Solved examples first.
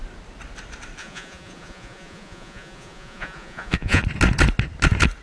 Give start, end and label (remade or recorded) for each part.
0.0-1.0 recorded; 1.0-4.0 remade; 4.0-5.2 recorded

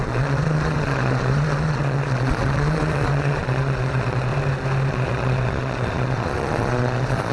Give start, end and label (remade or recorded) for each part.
0.0-4.3 remade; 4.3-4.9 recorded; 4.9-7.3 remade

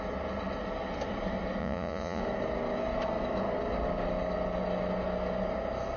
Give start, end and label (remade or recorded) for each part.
0.0-1.6 recorded; 1.6-2.2 remade; 2.2-6.0 recorded

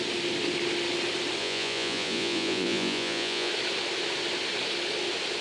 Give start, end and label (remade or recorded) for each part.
0.0-1.4 recorded; 1.4-3.5 remade; 3.5-5.4 recorded

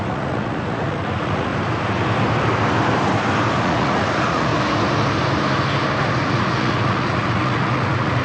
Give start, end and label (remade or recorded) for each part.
0.0-1.5 remade; 1.5-3.6 recorded; 3.6-4.5 remade; 4.5-6.1 recorded; 6.1-8.2 remade

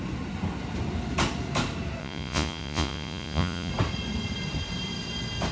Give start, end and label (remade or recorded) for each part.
0.0-2.0 recorded; 2.0-3.7 remade; 3.7-5.5 recorded